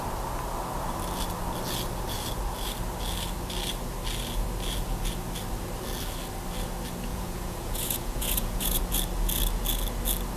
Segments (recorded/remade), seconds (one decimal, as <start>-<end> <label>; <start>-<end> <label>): 0.0-7.1 recorded; 7.1-8.8 remade; 8.8-10.4 recorded